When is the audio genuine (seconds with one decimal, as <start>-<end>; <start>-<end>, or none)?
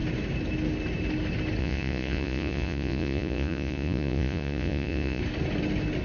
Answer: 0.0-1.6; 5.2-6.0